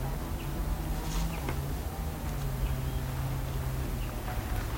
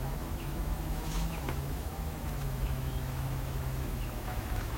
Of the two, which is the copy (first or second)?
second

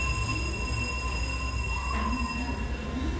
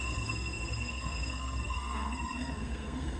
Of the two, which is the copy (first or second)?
second